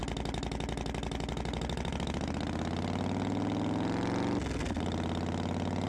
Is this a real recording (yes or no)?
yes